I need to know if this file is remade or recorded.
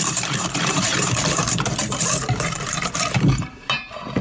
remade